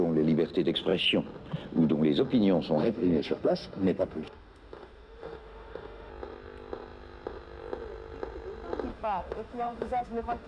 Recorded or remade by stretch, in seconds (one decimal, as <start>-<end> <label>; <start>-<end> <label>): 0.0-2.8 recorded; 2.8-6.1 remade; 6.1-8.9 recorded; 8.9-10.5 remade